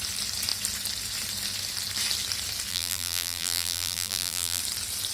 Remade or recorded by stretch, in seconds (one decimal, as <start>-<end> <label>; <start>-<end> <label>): 0.0-2.7 recorded; 2.7-4.6 remade; 4.6-5.1 recorded